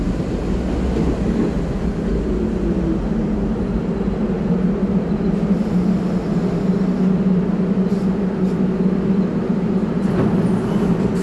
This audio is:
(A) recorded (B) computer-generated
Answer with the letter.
A